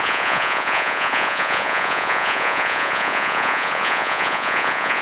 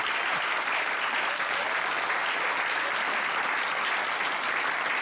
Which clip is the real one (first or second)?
second